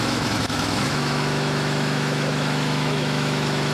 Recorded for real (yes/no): no